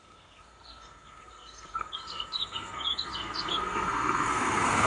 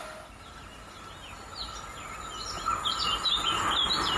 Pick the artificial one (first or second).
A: first